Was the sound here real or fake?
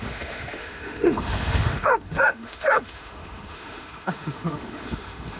fake